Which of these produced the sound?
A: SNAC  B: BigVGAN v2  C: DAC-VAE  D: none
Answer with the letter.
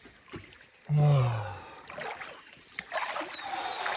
D